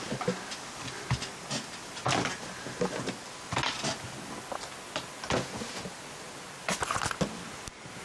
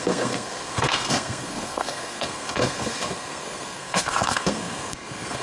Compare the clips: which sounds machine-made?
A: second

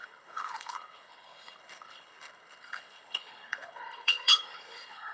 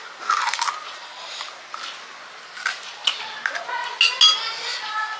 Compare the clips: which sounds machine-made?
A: first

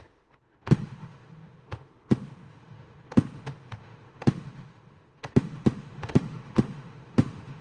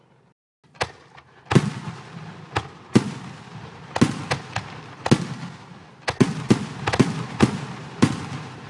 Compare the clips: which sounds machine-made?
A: first